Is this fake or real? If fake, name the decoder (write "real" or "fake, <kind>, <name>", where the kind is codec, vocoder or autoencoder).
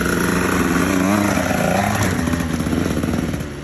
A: real